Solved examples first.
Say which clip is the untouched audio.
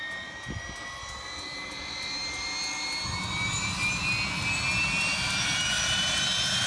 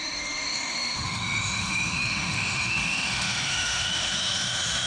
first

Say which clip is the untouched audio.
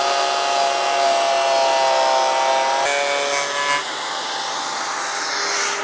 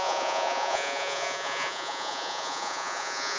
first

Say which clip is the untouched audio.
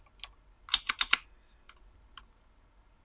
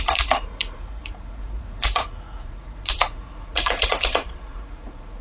first